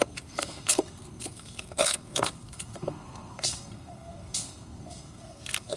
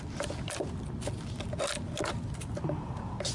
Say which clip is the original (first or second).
second